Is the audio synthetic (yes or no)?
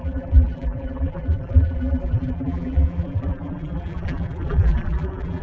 yes